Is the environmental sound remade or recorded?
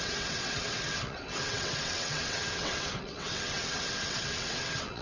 remade